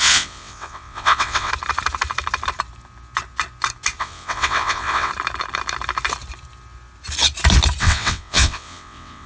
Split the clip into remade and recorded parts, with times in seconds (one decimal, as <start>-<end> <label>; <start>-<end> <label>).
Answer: 0.0-1.5 remade; 1.5-4.0 recorded; 4.0-5.1 remade; 5.1-7.8 recorded; 7.8-9.3 remade